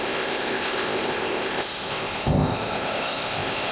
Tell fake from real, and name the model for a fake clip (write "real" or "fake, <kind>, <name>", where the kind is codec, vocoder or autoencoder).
fake, codec, ZipCodec